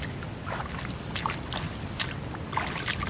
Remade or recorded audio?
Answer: recorded